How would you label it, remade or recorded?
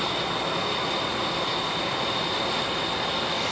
recorded